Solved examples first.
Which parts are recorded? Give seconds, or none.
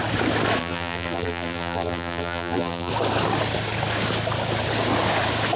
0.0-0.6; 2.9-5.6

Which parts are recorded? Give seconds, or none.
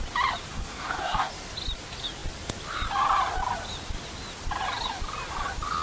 0.0-0.5; 1.3-5.8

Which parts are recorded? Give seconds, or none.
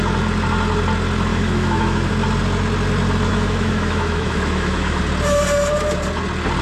0.0-1.3; 2.1-3.3; 5.0-6.6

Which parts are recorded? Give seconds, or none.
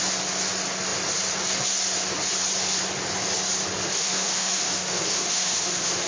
0.0-4.0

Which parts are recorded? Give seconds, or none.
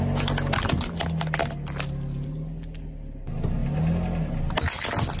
0.0-5.2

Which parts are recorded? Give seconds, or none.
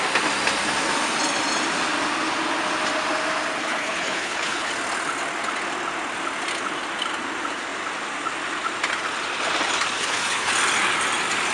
0.0-3.6; 4.7-10.0; 10.5-11.5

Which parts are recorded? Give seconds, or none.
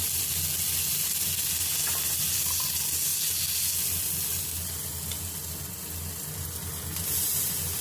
0.0-7.8